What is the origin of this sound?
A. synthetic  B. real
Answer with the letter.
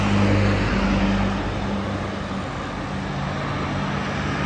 B